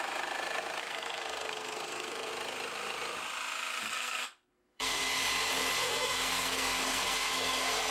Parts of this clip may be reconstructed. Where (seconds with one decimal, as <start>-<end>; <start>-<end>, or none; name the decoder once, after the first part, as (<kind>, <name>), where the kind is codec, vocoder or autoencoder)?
0.8-2.3 (codec, SNAC); 3.8-5.2; 5.8-7.9